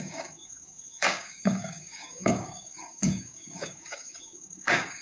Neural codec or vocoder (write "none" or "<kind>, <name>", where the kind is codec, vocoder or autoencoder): codec, DAC